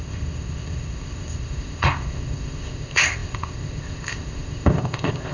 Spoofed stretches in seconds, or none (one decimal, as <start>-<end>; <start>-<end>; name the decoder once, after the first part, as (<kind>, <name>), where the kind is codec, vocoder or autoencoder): 0.0-5.3 (codec, ZipCodec)